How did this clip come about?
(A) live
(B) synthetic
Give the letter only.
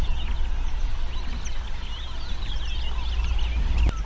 A